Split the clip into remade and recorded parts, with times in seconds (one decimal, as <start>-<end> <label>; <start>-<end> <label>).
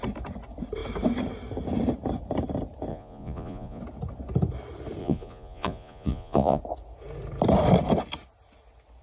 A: 0.0-2.9 recorded; 2.9-3.8 remade; 3.8-5.0 recorded; 5.0-6.6 remade; 6.6-9.0 recorded